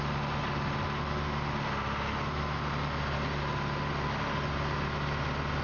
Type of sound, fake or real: real